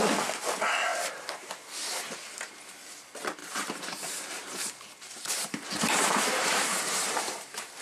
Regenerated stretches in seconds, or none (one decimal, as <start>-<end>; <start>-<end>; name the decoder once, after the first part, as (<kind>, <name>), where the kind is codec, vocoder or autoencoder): 0.9-1.5 (vocoder, BigVGAN v2); 3.4-7.8